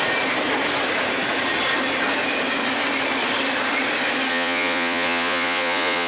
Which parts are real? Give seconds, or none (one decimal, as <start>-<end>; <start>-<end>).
0.0-4.3